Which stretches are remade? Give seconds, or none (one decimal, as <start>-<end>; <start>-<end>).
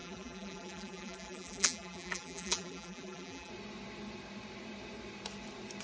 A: 0.0-3.5